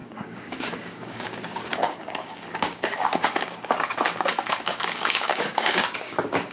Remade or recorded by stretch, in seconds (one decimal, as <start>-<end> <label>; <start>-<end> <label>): 0.0-6.5 remade